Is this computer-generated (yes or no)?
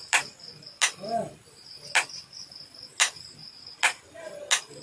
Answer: no